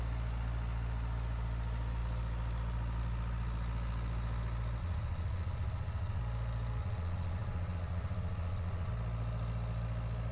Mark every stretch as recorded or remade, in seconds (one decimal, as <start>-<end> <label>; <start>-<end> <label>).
0.0-4.8 recorded; 4.8-6.2 remade; 6.2-6.8 recorded; 6.8-8.9 remade; 8.9-10.3 recorded